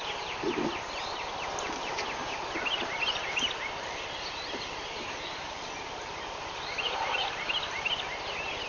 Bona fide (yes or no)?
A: no